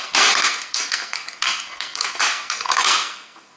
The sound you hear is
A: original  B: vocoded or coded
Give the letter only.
B